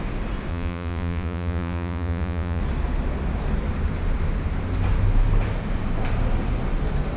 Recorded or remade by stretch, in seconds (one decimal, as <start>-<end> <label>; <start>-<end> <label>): 0.0-0.5 recorded; 0.5-2.6 remade; 2.6-7.2 recorded